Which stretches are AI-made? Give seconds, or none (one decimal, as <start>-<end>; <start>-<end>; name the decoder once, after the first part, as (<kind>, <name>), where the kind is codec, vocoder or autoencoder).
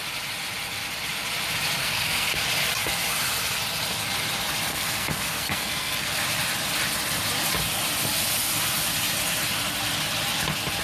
1.8-2.4 (codec, SNAC); 4.7-6.2